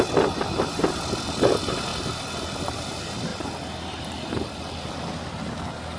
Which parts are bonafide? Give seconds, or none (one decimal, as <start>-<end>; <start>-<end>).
1.9-2.6